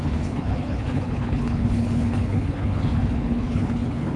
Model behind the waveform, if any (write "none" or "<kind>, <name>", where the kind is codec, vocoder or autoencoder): codec, HILCodec